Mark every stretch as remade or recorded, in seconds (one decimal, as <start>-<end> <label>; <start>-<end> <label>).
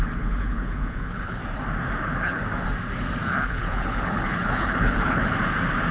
0.0-1.4 remade; 1.4-2.0 recorded; 2.0-2.4 remade; 2.4-3.3 recorded; 3.3-5.2 remade; 5.2-5.9 recorded